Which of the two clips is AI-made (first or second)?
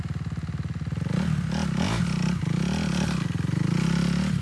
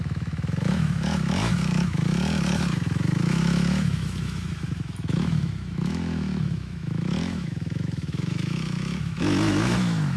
second